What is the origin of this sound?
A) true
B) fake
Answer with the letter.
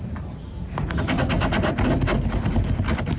A